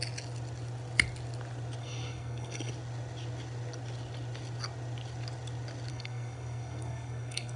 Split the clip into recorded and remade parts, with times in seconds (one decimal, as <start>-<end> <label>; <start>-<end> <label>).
0.0-1.8 recorded; 1.8-2.7 remade; 2.7-5.9 recorded; 5.9-7.6 remade